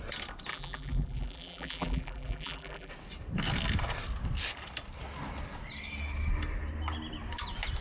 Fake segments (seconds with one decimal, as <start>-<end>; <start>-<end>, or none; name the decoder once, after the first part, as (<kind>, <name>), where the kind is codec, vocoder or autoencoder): 0.5-2.9 (vocoder, BigVGAN v2)